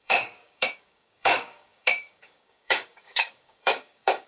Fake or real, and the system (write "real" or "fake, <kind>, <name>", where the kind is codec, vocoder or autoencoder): fake, codec, DAC